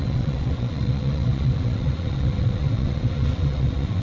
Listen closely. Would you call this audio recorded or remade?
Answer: remade